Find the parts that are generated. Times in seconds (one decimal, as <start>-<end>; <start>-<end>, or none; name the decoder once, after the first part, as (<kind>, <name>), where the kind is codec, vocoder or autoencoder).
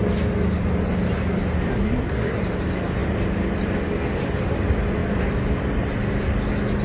1.7-2.4 (codec, SNAC)